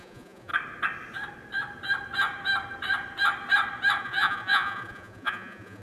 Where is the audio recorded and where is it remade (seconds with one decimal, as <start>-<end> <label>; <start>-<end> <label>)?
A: 0.0-0.5 remade; 0.5-4.0 recorded; 4.0-5.8 remade